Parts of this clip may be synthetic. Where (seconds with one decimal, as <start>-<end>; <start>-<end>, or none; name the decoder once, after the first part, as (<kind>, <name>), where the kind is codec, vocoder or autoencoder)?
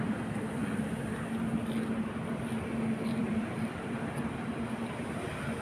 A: 3.2-4.5 (vocoder, BigVGAN v2)